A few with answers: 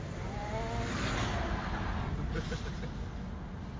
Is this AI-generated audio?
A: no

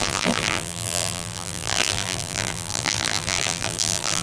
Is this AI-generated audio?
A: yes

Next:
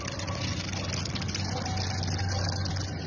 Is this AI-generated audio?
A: no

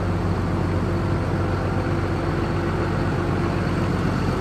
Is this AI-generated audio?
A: no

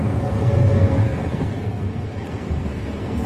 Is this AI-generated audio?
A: yes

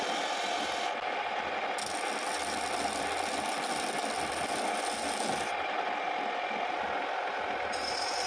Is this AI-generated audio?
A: no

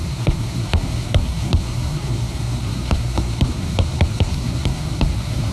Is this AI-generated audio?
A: yes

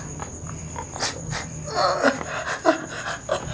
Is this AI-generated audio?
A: no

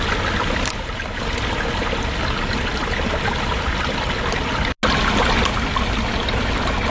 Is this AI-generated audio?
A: no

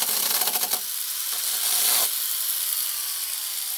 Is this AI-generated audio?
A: no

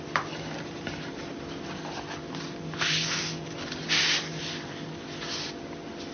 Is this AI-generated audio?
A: no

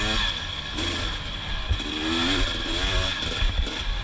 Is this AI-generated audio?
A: no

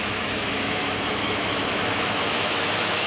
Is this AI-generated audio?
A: yes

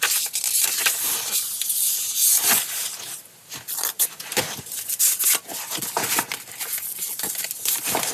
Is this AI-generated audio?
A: no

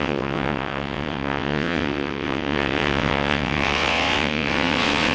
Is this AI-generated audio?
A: yes